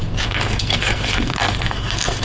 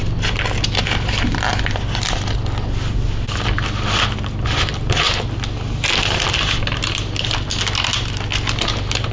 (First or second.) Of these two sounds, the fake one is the first